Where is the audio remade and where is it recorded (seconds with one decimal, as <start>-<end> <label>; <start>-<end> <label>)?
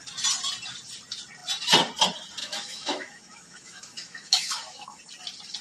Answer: 0.0-2.4 recorded; 2.4-5.0 remade; 5.0-5.6 recorded